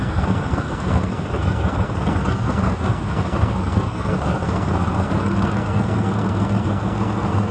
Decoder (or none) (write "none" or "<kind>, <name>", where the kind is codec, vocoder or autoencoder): codec, SNAC